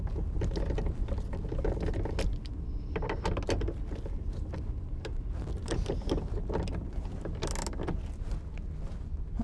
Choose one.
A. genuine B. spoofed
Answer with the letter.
A